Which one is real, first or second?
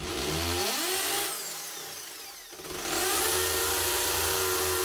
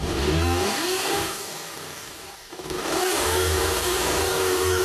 first